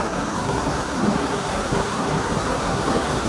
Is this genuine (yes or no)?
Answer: no